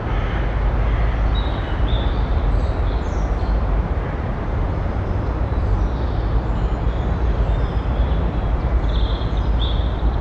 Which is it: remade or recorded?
remade